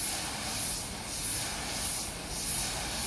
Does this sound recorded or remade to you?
recorded